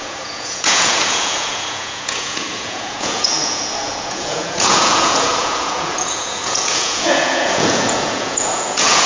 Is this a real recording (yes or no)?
no